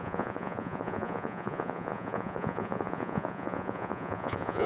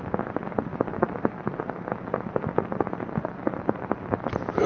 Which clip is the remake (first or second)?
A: first